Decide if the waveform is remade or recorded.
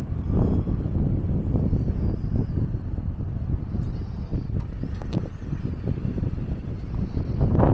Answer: recorded